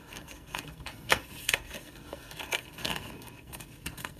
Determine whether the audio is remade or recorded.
remade